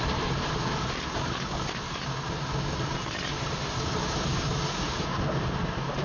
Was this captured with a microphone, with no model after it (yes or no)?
yes